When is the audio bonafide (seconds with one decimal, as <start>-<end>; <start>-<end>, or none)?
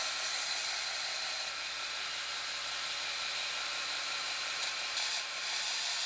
0.0-3.7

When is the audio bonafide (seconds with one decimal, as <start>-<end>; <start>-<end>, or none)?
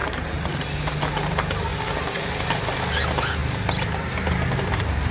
0.9-3.4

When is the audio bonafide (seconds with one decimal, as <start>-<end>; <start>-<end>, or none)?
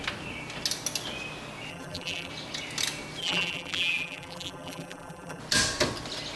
0.0-1.7; 2.3-3.2; 5.4-6.4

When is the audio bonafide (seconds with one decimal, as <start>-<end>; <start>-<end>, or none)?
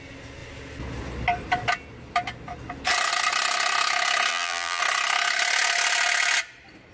0.0-4.3; 4.8-6.9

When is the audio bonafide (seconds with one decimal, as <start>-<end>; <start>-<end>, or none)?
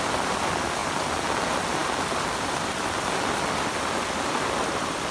0.0-5.1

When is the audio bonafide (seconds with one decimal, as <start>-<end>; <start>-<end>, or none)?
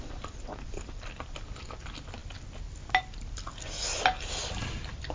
0.0-5.1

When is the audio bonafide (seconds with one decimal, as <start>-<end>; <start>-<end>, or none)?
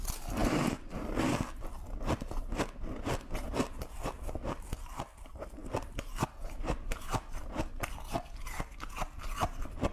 0.0-0.4; 1.1-9.9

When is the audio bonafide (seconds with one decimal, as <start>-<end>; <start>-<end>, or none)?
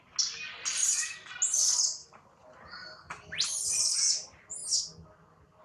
0.0-2.0; 3.5-5.6